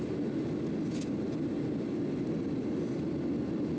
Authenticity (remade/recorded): recorded